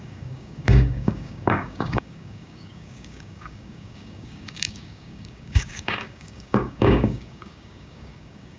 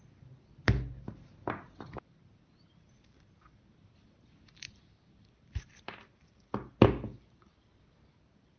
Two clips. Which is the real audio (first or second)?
second